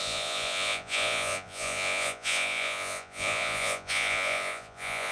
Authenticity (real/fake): fake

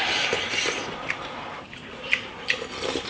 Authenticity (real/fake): real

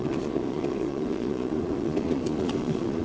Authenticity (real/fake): fake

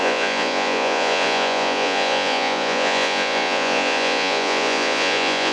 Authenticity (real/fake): fake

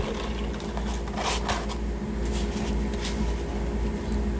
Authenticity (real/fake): real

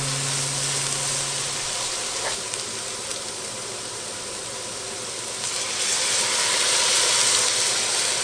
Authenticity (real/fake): real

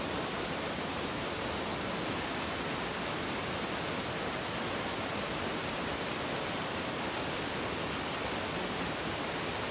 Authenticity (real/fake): real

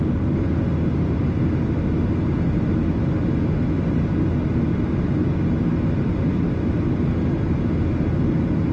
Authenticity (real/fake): real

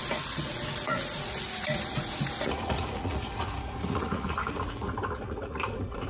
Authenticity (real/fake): fake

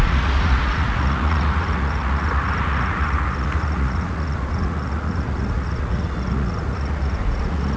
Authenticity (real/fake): fake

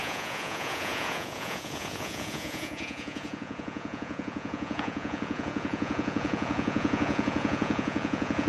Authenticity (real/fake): fake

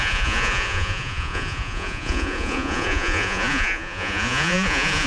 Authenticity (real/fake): fake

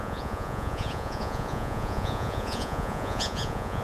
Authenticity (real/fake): fake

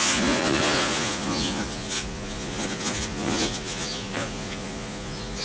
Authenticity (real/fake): fake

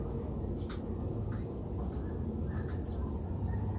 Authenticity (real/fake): real